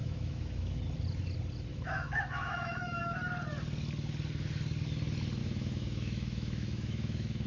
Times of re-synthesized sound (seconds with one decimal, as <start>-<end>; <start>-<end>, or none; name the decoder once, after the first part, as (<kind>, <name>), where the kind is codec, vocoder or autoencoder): 0.0-0.8 (autoencoder, DAC-VAE); 1.7-3.0; 5.4-7.5